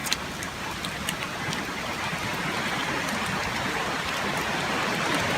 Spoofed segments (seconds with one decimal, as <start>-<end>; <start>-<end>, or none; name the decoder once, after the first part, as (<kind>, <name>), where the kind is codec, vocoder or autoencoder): 0.6-5.4 (vocoder, BigVGAN v2)